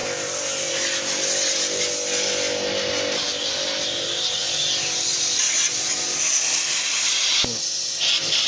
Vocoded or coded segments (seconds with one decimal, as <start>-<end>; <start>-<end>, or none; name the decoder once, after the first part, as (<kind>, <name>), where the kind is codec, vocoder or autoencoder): none